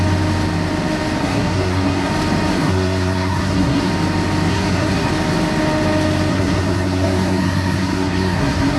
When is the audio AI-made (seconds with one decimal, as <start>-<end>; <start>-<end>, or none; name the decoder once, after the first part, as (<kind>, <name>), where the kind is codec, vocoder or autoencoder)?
1.2-2.1 (codec, SNAC); 2.5-3.9; 4.5-5.1; 6.3-8.8